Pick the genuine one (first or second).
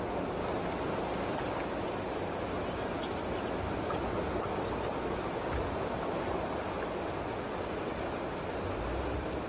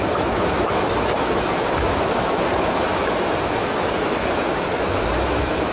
first